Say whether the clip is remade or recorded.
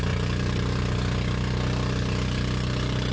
recorded